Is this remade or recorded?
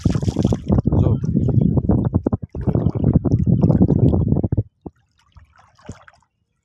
recorded